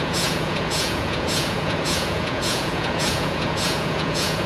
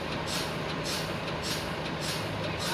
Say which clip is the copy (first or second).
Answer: first